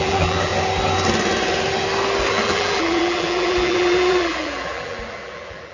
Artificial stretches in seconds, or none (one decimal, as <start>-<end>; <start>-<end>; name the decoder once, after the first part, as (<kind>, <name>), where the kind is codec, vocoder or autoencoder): 0.0-0.5 (vocoder, BigVGAN v2); 2.3-5.7